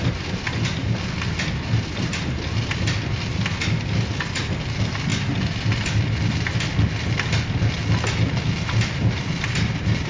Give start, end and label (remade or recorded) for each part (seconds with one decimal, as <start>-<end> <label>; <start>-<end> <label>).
0.0-10.1 recorded